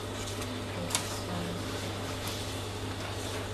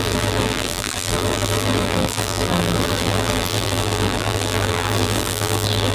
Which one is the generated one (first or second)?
second